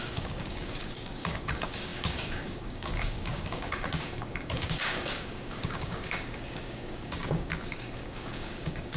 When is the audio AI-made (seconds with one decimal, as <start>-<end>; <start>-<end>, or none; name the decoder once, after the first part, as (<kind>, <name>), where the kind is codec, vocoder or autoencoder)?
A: 0.0-9.0 (codec, DAC)